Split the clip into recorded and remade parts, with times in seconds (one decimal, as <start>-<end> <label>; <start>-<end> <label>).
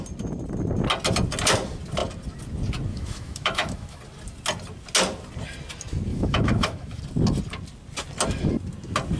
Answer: 0.0-2.9 recorded; 2.9-4.0 remade; 4.0-6.1 recorded; 6.1-7.0 remade; 7.0-9.2 recorded